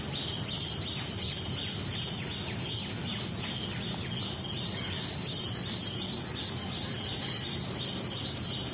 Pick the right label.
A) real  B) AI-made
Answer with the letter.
A